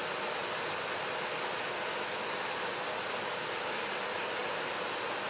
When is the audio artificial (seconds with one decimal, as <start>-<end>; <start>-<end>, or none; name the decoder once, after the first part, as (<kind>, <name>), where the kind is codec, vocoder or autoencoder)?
none